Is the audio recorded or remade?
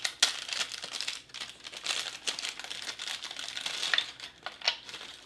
recorded